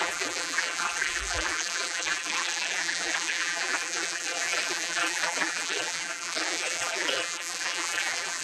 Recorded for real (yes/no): no